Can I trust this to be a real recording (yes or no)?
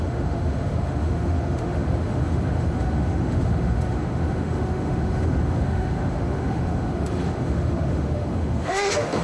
no